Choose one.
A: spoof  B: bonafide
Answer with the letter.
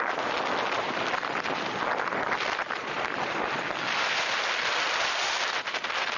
B